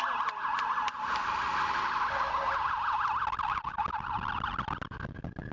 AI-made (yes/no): no